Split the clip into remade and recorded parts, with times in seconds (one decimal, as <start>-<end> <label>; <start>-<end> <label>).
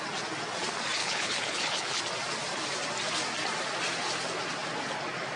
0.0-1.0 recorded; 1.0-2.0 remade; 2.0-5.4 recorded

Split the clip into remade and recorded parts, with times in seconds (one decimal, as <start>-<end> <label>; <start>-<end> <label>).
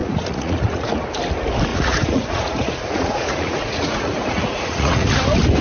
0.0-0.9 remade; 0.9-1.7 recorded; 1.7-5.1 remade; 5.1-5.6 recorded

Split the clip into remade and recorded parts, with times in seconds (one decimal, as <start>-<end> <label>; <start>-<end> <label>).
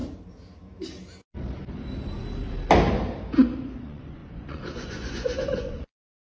0.0-3.8 recorded; 3.8-6.4 remade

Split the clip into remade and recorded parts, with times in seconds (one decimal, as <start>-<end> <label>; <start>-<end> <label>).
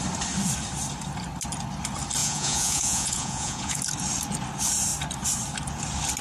0.0-2.2 recorded; 2.2-3.8 remade; 3.8-6.2 recorded